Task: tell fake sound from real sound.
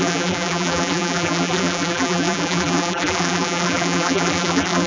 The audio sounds fake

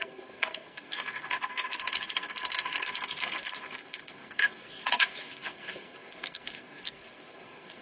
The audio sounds fake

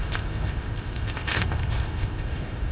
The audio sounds fake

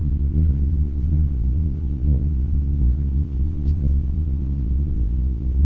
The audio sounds fake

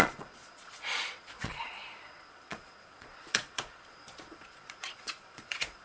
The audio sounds fake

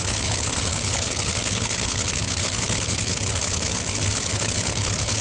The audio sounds fake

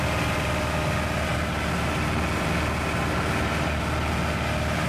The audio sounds real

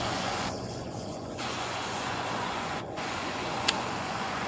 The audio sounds fake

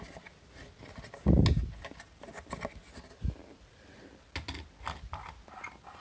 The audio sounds real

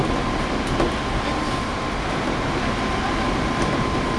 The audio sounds real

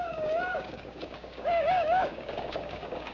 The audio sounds fake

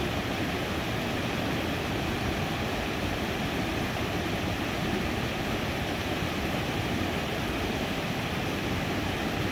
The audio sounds fake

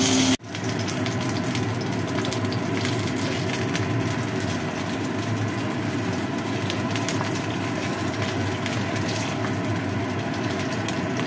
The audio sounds real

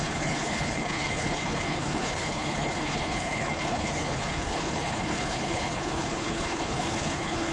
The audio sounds fake